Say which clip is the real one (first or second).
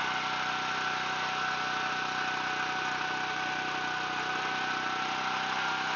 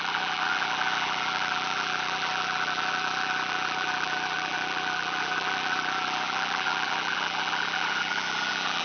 first